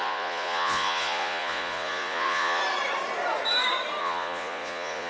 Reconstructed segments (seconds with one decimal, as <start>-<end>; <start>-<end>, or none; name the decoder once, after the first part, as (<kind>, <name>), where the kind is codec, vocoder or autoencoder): 0.0-2.6 (vocoder, Vocos); 4.0-5.1